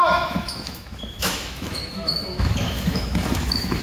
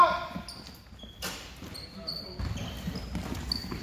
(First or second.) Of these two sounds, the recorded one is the second